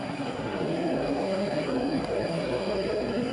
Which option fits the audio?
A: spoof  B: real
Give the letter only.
A